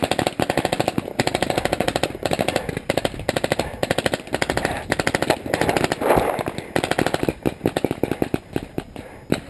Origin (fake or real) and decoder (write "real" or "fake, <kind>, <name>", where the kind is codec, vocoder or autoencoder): real